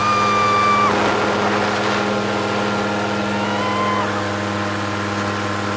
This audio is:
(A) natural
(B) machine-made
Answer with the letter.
A